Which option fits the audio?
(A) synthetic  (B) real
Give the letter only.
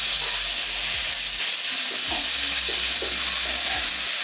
B